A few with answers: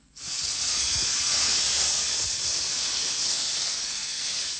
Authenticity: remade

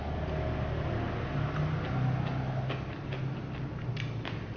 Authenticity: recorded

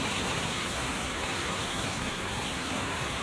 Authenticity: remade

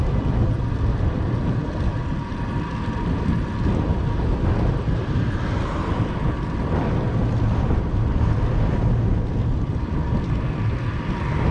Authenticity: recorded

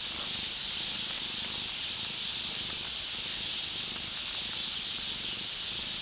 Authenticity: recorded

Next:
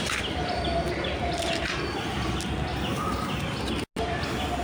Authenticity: recorded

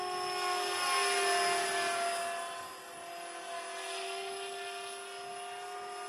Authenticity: recorded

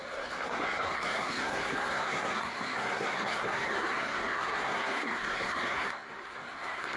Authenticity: remade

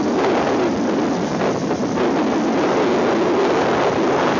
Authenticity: recorded